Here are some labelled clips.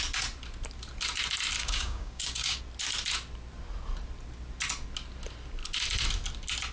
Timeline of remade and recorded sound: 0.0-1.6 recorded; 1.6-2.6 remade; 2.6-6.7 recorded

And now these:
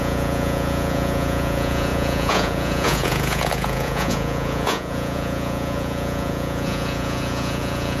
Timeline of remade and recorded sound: 0.0-8.0 remade

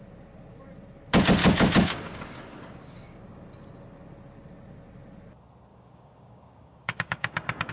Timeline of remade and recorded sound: 0.0-1.4 recorded; 1.4-3.2 remade; 3.2-5.7 recorded; 5.7-7.7 remade

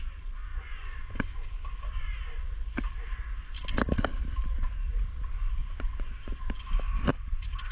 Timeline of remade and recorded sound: 0.0-0.5 recorded; 0.5-1.5 remade; 1.5-5.6 recorded; 5.6-6.5 remade; 6.5-7.1 recorded; 7.1-7.7 remade